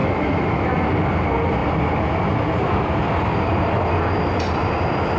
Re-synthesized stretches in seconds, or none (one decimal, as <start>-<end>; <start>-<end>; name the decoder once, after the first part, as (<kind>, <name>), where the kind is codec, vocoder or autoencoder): 0.0-0.7 (autoencoder, DAC-VAE)